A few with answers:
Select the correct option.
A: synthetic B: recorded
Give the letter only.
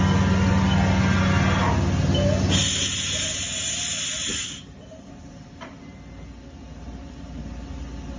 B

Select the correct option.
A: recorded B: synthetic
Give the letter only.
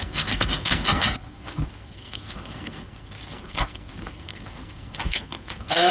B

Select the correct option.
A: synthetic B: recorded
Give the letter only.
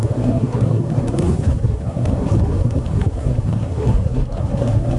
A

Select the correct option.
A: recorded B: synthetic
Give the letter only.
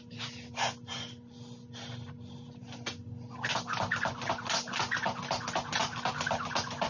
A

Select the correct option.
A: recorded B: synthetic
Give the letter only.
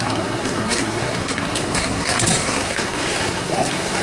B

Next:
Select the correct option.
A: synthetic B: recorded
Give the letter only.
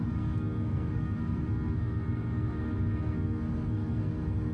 A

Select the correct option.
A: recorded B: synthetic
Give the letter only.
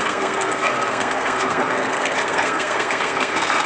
B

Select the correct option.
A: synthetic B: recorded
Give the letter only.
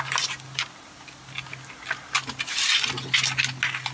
B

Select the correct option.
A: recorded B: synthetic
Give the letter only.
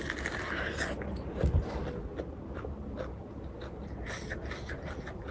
A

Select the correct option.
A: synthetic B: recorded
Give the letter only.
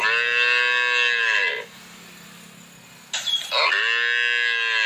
B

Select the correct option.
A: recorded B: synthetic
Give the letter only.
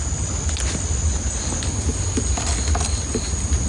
A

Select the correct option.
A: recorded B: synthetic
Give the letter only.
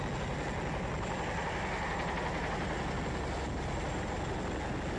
A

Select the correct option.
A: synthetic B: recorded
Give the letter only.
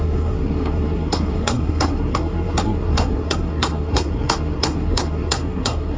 A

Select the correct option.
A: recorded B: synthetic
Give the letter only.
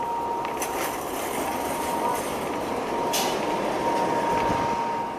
A